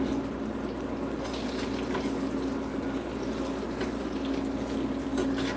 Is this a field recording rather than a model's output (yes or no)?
yes